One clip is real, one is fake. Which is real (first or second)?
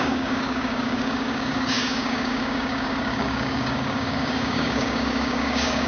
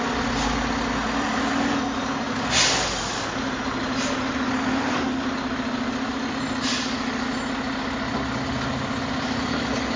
second